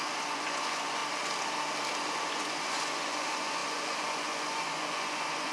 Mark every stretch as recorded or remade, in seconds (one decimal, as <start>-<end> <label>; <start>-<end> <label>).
0.0-1.0 remade; 1.0-2.0 recorded; 2.0-5.5 remade